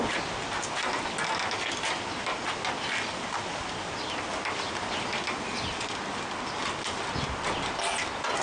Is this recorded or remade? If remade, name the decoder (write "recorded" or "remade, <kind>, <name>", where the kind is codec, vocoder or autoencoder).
recorded